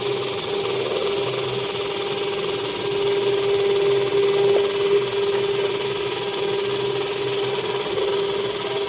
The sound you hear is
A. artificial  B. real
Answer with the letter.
B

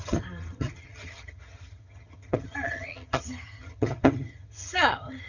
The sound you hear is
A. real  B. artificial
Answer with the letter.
B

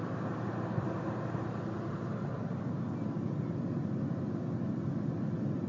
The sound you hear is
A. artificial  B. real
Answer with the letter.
B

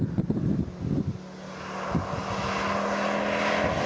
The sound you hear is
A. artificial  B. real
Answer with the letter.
B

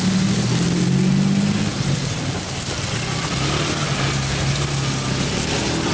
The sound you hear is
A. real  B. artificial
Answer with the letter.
A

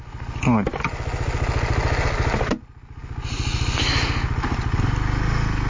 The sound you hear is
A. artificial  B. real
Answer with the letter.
B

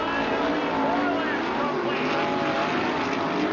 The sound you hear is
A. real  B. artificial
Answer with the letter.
A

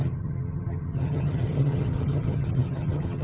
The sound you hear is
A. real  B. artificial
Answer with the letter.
B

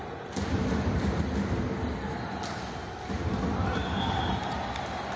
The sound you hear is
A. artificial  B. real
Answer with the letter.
B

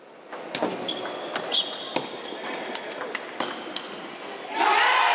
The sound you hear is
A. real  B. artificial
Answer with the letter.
A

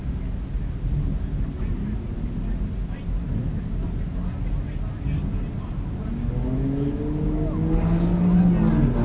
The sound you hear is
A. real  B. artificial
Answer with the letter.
A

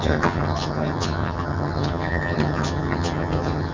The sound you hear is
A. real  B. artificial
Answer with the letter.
B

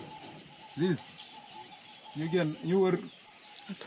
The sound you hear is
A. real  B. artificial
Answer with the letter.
A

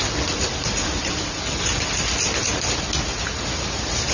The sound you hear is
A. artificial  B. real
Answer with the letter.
B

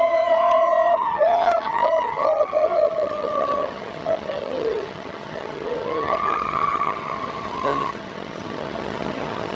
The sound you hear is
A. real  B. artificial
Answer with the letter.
B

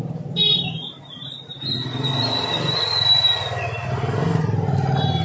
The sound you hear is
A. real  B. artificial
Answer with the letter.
A